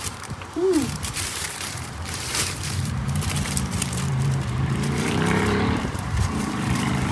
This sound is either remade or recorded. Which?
remade